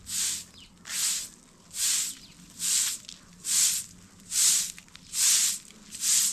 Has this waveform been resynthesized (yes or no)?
no